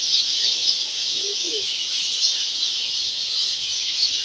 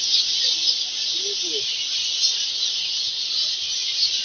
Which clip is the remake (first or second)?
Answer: first